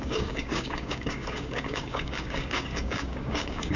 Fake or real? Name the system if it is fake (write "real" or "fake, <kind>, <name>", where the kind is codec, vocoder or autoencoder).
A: fake, codec, DAC